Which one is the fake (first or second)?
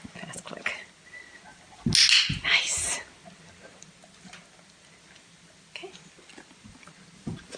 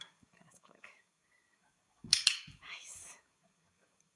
second